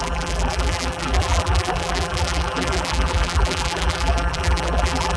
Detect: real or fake fake